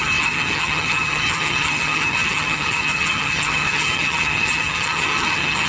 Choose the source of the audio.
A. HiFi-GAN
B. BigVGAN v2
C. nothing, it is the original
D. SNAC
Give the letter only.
A